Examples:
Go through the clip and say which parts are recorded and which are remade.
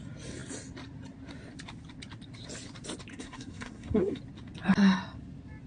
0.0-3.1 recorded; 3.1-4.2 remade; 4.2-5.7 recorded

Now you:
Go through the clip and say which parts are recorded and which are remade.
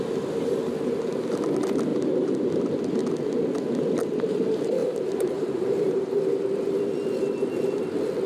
0.0-1.9 recorded; 1.9-2.5 remade; 2.5-4.8 recorded; 4.8-6.1 remade; 6.1-8.3 recorded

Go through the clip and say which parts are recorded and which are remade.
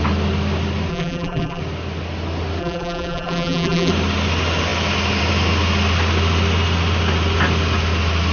0.0-0.9 recorded; 0.9-1.6 remade; 1.6-2.6 recorded; 2.6-3.9 remade; 3.9-8.3 recorded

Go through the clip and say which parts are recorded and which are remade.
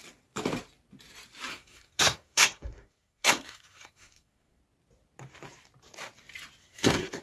0.0-1.5 recorded; 1.5-4.6 remade; 4.6-6.6 recorded; 6.6-7.2 remade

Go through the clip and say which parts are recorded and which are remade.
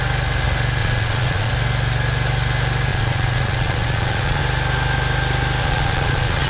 0.0-0.8 recorded; 0.8-1.5 remade; 1.5-2.9 recorded; 2.9-4.4 remade; 4.4-5.6 recorded; 5.6-6.5 remade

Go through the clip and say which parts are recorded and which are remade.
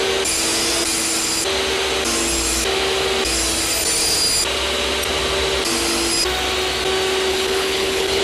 0.0-7.3 recorded; 7.3-8.2 remade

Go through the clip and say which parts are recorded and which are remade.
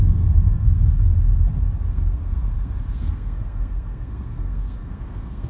0.0-1.1 remade; 1.1-1.9 recorded; 1.9-5.5 remade